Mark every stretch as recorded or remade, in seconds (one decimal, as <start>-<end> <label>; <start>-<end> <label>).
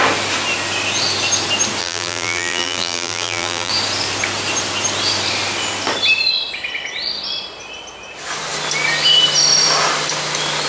0.0-1.8 recorded; 1.8-3.7 remade; 3.7-10.7 recorded